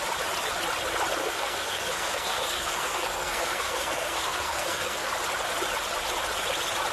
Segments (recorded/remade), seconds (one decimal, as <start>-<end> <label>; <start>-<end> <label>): 0.0-1.2 recorded; 1.2-5.1 remade; 5.1-6.9 recorded